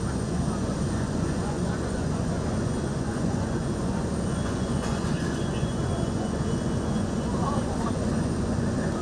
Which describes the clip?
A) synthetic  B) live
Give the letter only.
A